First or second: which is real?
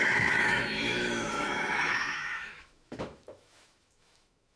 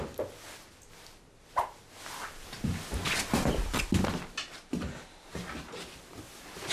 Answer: second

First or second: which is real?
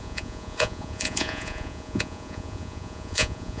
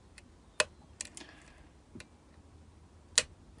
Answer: second